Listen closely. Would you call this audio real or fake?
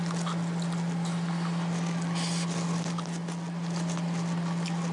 real